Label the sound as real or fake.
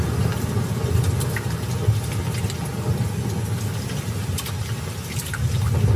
real